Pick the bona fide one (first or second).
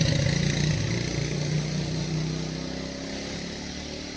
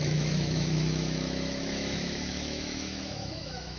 first